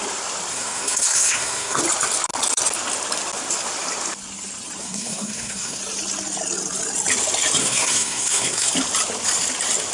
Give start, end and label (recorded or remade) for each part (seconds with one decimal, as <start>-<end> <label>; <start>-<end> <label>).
0.0-0.5 recorded; 0.5-1.8 remade; 1.8-4.8 recorded; 4.8-5.8 remade; 5.8-7.6 recorded; 7.6-8.7 remade; 8.7-9.9 recorded